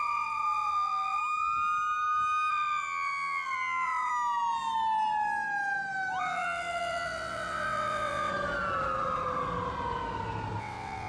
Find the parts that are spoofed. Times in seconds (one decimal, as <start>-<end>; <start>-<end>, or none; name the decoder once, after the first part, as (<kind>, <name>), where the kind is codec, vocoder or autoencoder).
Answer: 0.0-1.2 (vocoder, WaveNeXt); 2.5-4.1; 6.2-8.3; 10.6-11.1